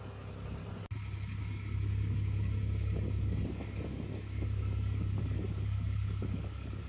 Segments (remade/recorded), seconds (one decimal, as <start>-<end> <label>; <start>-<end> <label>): 0.0-0.6 remade; 0.6-1.4 recorded; 1.4-6.9 remade